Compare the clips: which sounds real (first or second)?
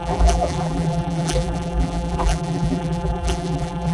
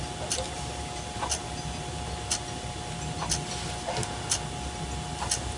second